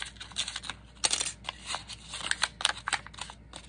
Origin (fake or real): real